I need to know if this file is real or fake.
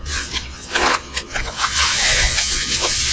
fake